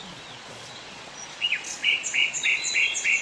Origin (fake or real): fake